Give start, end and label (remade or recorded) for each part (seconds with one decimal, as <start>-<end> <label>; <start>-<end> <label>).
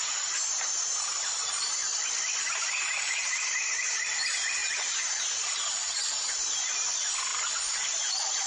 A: 0.0-1.8 remade; 1.8-3.0 recorded; 3.0-7.3 remade; 7.3-8.0 recorded; 8.0-8.5 remade